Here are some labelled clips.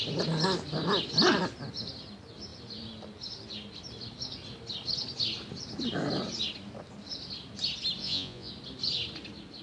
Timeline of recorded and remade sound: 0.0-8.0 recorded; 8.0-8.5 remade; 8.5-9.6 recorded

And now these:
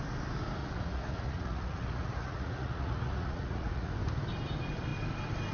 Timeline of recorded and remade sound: 0.0-0.6 recorded; 0.6-3.9 remade; 3.9-5.5 recorded

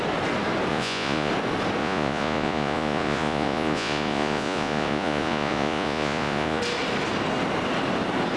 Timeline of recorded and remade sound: 0.0-0.7 recorded; 0.7-1.3 remade; 1.3-1.8 recorded; 1.8-6.6 remade; 6.6-8.4 recorded

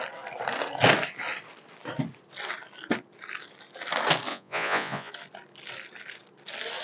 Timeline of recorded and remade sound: 0.0-4.3 recorded; 4.3-5.1 remade; 5.1-6.8 recorded

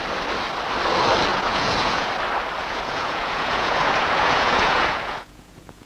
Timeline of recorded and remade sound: 0.0-1.3 recorded; 1.3-2.1 remade; 2.1-2.6 recorded; 2.6-5.9 remade

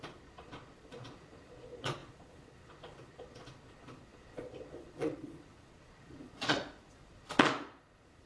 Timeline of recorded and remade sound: 0.0-8.3 remade

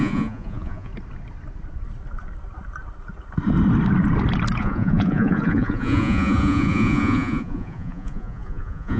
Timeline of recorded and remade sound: 0.0-0.9 remade; 0.9-4.6 recorded; 4.6-9.0 remade